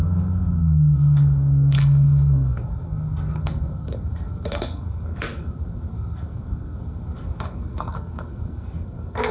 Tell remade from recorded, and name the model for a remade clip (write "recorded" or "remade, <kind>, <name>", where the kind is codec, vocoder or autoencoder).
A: remade, codec, SNAC